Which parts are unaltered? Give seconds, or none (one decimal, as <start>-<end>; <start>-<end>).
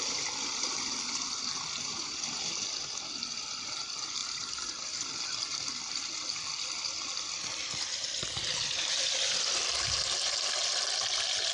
0.0-11.5